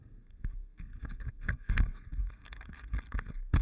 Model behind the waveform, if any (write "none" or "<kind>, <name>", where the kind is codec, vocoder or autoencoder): codec, SNAC